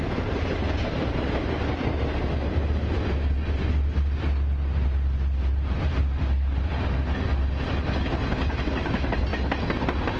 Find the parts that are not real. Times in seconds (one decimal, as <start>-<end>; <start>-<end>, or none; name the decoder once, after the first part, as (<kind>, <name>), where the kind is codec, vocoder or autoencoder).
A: none